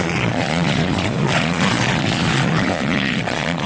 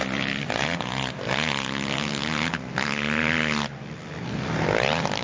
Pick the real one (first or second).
second